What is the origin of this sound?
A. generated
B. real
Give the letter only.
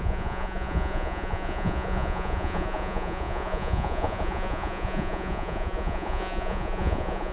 A